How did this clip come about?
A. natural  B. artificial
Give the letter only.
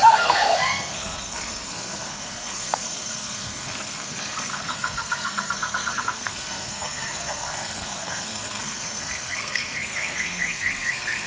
B